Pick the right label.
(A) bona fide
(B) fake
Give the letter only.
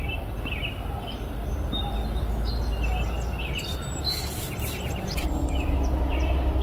A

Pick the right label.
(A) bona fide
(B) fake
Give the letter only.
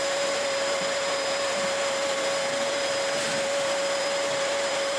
B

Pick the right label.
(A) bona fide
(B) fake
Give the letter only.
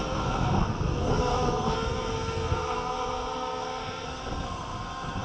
B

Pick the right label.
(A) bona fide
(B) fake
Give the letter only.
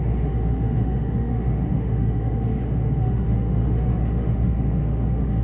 B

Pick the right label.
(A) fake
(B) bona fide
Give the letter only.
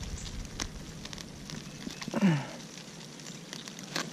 B